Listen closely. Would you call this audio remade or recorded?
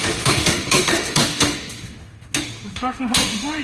remade